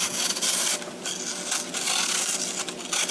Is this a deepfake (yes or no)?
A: no